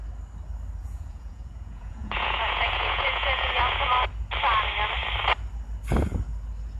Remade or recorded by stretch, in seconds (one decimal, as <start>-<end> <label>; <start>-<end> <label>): 0.0-0.8 recorded; 0.8-3.9 remade; 3.9-6.8 recorded